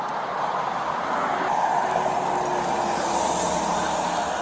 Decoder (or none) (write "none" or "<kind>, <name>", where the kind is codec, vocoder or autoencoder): none